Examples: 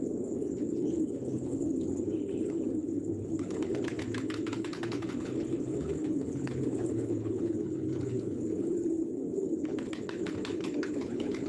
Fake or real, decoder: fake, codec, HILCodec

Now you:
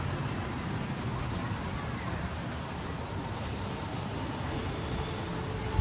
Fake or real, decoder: real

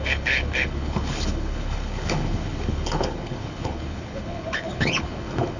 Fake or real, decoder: fake, codec, HILCodec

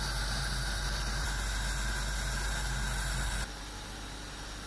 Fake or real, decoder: real